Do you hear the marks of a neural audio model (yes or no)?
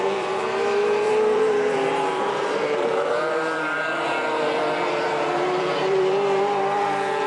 yes